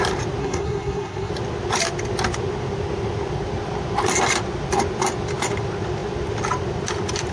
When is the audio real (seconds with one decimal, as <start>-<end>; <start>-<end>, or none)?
0.0-0.4; 1.3-7.3